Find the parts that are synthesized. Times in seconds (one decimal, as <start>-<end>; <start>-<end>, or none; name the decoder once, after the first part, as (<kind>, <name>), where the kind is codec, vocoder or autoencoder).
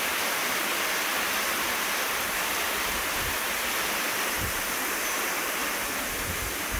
0.0-0.7 (vocoder, BigVGAN v2); 4.3-5.6; 6.3-6.8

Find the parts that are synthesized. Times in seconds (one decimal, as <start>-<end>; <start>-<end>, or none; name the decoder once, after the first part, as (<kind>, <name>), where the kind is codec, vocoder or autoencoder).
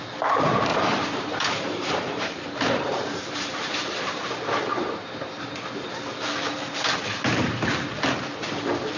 0.7-4.3 (vocoder, BigVGAN v2); 4.7-5.6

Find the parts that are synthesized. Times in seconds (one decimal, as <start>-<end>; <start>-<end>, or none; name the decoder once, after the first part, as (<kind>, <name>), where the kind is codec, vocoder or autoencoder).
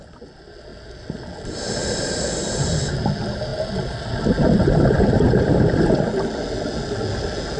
none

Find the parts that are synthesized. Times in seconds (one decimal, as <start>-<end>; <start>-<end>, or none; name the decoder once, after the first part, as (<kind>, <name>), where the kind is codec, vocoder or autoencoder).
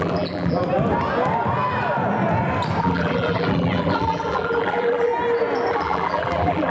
0.0-0.6 (vocoder, BigVGAN v2); 2.8-5.1; 5.7-6.7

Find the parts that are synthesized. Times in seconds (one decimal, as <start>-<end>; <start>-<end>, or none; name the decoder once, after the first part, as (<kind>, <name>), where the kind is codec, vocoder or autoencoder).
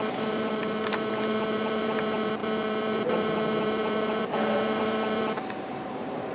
0.0-6.3 (vocoder, BigVGAN v2)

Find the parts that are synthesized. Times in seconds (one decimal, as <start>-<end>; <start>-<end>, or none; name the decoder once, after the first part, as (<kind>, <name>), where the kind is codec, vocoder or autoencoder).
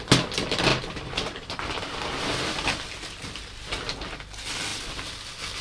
0.7-1.8 (vocoder, BigVGAN v2)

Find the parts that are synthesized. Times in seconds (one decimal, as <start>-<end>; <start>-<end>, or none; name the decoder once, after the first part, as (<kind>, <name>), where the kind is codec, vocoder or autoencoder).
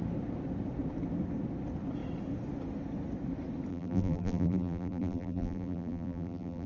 3.7-6.7 (vocoder, BigVGAN v2)